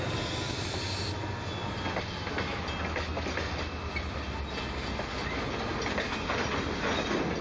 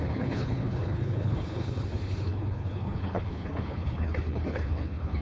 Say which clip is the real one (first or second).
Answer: first